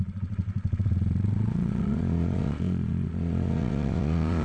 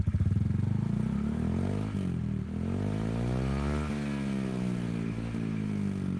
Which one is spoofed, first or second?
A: first